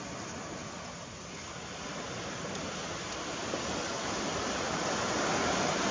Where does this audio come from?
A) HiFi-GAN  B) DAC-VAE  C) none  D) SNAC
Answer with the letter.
C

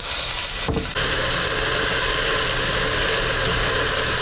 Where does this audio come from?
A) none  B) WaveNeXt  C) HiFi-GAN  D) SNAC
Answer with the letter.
A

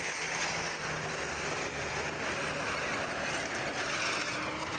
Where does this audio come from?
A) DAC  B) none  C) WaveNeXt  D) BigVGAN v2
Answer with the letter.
B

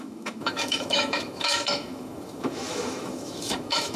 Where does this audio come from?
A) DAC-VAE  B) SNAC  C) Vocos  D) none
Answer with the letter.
A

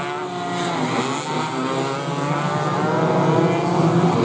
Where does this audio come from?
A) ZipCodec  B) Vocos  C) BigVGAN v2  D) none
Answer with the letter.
D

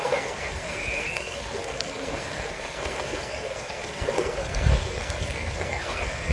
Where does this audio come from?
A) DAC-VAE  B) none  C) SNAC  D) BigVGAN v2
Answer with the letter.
C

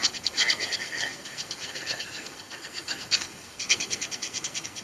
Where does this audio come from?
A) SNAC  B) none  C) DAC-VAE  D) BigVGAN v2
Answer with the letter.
A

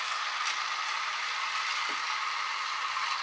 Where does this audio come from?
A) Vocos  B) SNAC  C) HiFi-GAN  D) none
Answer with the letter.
D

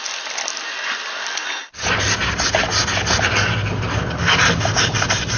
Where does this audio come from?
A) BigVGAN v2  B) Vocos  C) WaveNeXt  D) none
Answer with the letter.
D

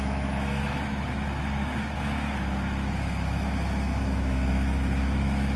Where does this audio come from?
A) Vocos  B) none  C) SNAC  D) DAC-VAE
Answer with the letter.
D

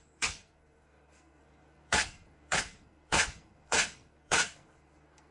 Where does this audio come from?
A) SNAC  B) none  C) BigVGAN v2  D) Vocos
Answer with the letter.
A